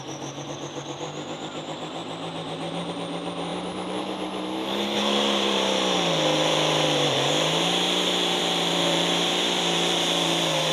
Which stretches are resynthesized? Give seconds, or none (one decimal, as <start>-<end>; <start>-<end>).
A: 0.0-10.7